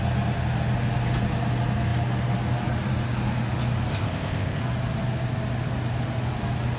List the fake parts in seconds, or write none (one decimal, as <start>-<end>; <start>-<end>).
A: 3.9-4.6